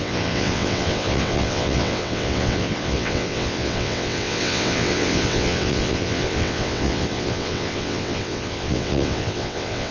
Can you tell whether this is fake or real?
fake